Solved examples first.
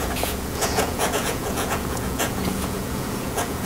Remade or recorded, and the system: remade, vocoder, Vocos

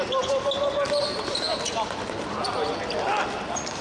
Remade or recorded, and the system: recorded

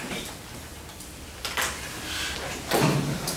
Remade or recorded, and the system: recorded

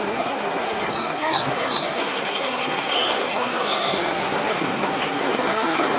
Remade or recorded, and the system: remade, codec, SNAC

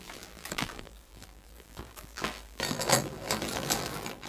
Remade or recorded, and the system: remade, vocoder, BigVGAN v2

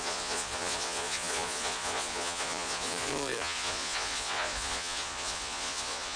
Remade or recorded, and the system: remade, vocoder, Vocos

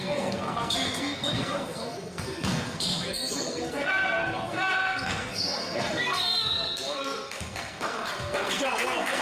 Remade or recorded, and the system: remade, codec, SNAC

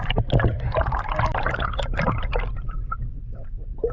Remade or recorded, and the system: recorded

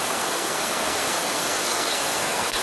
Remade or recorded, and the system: remade, codec, SNAC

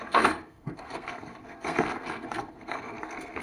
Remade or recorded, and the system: remade, codec, SNAC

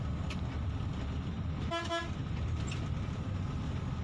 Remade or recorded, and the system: recorded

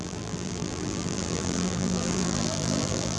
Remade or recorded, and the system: remade, vocoder, BigVGAN v2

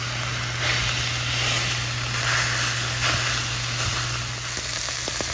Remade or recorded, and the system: recorded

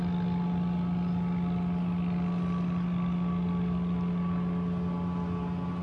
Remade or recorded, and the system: recorded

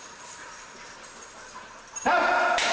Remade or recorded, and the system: recorded